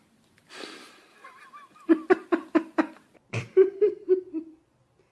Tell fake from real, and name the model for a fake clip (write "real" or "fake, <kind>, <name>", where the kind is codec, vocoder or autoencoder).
fake, vocoder, BigVGAN v2